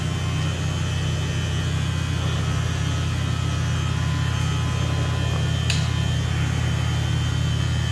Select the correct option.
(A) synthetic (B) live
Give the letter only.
B